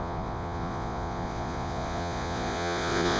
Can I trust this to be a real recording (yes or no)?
no